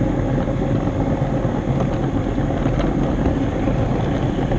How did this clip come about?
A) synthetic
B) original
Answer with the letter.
B